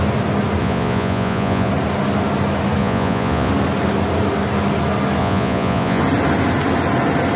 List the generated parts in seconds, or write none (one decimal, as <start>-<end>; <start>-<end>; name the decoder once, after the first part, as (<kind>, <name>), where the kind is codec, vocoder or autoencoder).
0.6-1.7 (vocoder, Vocos); 2.8-3.5; 5.2-6.0